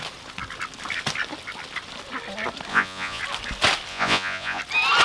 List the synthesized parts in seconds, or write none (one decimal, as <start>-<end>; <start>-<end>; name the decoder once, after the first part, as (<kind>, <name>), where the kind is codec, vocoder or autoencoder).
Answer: 2.7-3.2 (vocoder, Vocos); 3.9-4.6